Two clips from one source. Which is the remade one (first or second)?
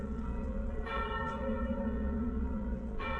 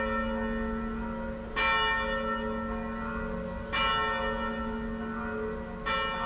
first